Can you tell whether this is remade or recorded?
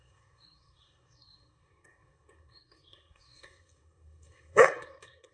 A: remade